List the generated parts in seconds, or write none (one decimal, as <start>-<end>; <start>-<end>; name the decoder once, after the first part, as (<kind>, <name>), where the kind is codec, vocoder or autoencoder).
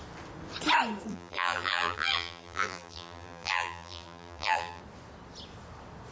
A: 1.1-4.8 (vocoder, BigVGAN v2)